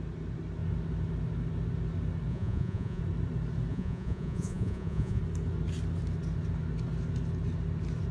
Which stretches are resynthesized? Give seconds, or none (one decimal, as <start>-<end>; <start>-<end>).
2.3-3.0; 3.7-5.2